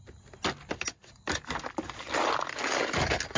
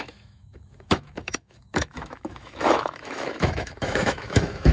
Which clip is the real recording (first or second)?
first